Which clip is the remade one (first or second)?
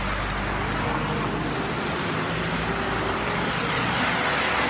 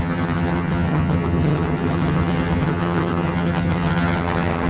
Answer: second